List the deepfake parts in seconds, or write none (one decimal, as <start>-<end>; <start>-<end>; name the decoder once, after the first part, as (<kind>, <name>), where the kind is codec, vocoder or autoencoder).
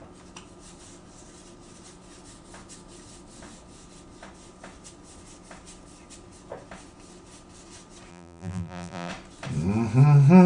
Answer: 8.1-9.1 (vocoder, BigVGAN v2)